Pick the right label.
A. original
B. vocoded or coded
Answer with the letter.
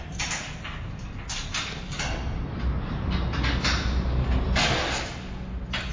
A